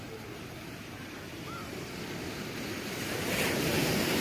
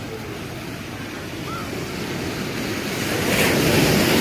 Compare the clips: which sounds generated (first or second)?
first